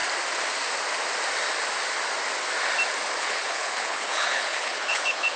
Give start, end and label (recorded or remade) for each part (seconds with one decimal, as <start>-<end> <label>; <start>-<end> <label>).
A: 0.0-3.2 recorded; 3.2-5.4 remade